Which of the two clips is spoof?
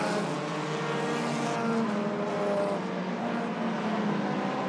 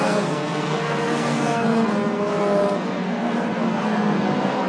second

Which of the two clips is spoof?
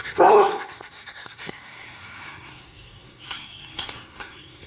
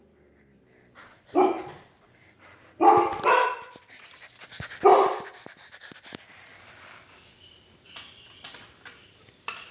first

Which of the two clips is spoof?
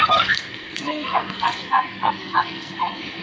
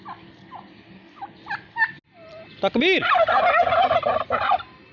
first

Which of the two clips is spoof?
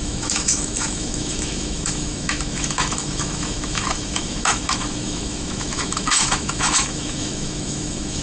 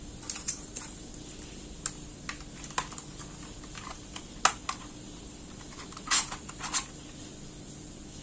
first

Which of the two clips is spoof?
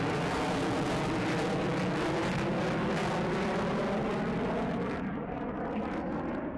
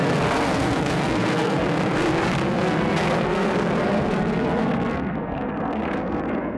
second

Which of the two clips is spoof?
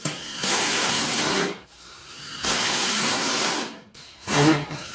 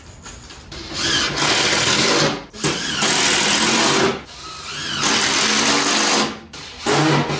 first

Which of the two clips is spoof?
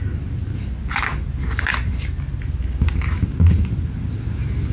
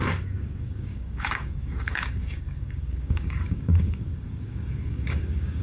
second